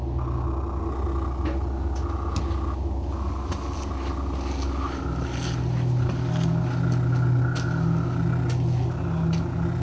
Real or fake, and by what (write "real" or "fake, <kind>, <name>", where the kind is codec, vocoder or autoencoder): real